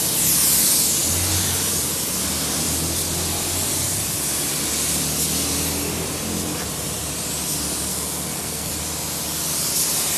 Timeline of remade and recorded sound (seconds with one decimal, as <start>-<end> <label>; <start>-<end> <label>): 0.0-7.9 recorded; 7.9-8.7 remade; 8.7-10.2 recorded